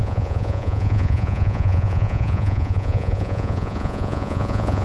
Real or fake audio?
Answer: fake